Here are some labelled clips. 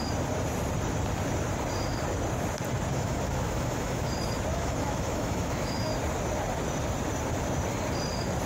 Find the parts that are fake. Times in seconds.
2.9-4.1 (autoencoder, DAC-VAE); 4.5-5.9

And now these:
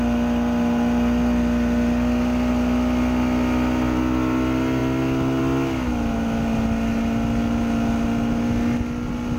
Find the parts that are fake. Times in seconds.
none

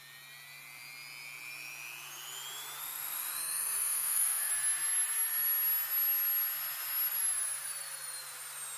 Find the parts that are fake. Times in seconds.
2.8-4.5 (autoencoder, DAC-VAE)

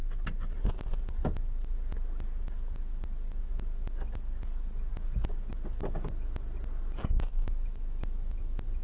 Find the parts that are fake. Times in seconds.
none

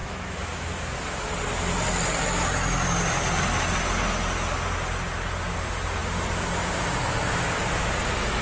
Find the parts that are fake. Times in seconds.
0.0-1.3 (autoencoder, DAC-VAE)

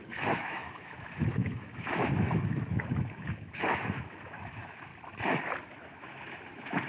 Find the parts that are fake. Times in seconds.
0.0-4.9 (autoencoder, DAC-VAE); 5.7-6.9

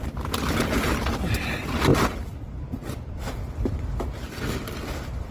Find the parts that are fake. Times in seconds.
none

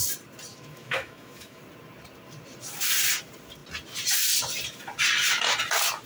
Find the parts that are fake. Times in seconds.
0.5-1.6 (autoencoder, DAC-VAE)